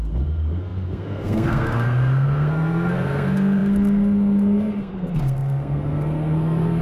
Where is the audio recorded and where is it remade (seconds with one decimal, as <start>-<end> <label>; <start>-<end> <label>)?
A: 0.0-6.8 remade